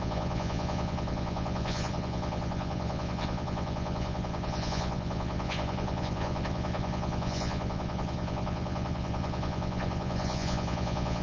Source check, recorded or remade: remade